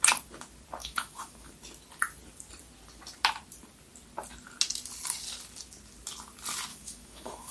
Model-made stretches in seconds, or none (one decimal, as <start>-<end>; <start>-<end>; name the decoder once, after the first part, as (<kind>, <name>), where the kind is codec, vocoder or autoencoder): 0.8-1.5 (autoencoder, DAC-VAE); 6.7-7.5